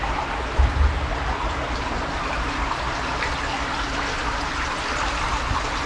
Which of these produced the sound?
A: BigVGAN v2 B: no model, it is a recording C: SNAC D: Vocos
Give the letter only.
B